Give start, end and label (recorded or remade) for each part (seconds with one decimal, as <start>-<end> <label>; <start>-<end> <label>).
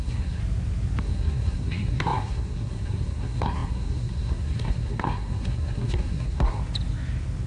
0.0-0.4 remade; 0.4-1.0 recorded; 1.0-6.6 remade; 6.6-7.5 recorded